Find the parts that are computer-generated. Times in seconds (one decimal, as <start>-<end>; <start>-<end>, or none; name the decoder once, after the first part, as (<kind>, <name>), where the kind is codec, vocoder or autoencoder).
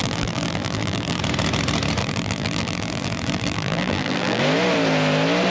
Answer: 0.0-1.2 (vocoder, BigVGAN v2); 2.0-4.4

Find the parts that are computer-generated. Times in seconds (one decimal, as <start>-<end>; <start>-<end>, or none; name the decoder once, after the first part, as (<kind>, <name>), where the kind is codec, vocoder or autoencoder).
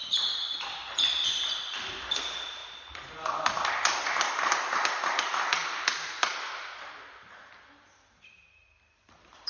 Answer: 0.0-2.6 (vocoder, BigVGAN v2); 4.3-9.5